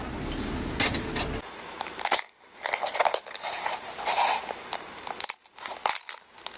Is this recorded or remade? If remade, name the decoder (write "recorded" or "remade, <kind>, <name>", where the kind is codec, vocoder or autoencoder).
recorded